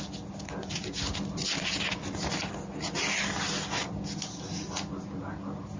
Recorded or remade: recorded